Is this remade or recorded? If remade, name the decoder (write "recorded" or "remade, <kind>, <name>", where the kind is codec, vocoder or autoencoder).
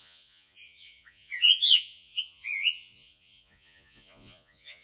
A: remade, vocoder, Vocos